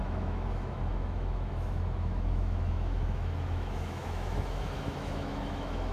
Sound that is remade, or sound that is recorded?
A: remade